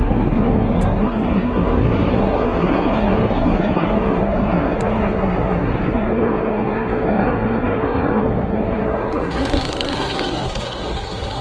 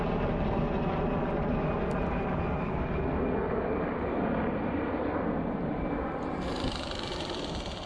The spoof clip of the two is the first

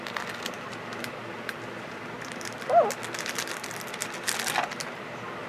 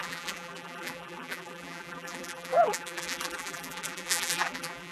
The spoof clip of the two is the second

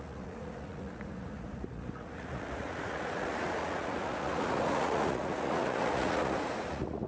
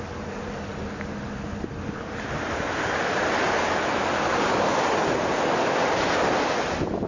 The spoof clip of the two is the first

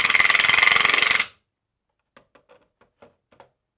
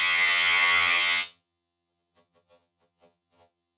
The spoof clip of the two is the second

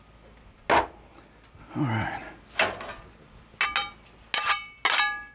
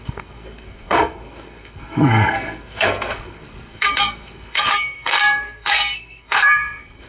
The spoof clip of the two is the second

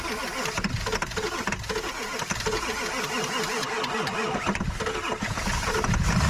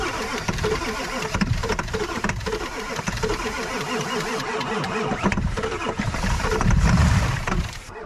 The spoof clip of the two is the second